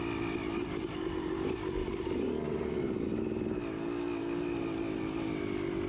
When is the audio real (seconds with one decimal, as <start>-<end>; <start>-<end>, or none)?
0.0-1.8; 2.8-5.9